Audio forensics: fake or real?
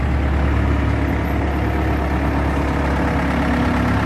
real